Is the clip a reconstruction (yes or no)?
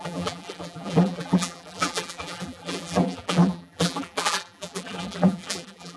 yes